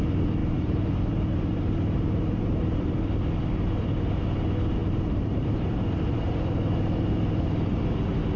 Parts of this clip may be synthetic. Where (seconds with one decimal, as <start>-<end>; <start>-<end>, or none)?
0.4-2.9; 4.8-7.8